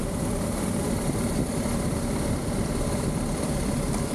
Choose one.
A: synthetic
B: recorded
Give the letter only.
A